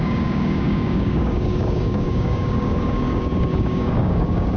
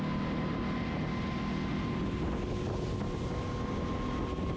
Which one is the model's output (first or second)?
first